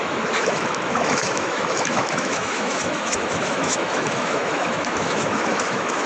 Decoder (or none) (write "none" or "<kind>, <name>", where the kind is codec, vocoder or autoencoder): autoencoder, DAC-VAE